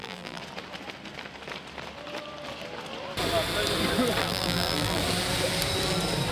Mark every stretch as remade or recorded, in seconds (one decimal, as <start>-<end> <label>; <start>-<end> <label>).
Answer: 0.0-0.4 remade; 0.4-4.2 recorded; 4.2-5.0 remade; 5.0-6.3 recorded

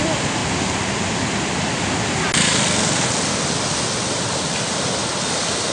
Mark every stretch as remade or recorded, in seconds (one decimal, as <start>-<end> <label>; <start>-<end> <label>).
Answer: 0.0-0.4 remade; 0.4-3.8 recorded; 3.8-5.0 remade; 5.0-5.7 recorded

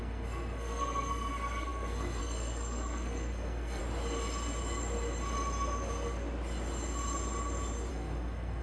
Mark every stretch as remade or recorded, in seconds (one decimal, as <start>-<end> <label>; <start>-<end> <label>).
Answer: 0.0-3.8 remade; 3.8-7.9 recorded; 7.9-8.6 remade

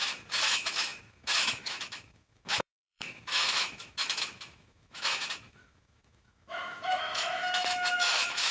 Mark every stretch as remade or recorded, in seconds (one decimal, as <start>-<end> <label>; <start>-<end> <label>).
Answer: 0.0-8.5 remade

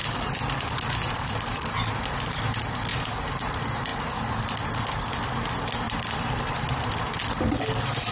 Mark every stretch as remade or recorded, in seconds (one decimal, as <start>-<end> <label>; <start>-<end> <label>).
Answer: 0.0-8.1 recorded